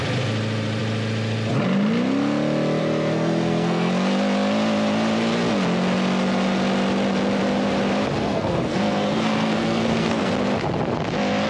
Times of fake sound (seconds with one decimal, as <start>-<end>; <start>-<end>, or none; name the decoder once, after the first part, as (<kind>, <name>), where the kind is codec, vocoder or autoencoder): 2.8-3.9 (codec, SNAC); 8.2-10.3